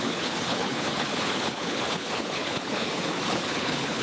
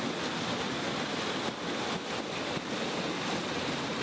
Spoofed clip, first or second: first